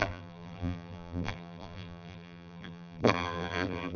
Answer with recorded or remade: remade